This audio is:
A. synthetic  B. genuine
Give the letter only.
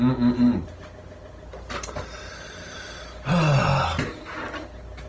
B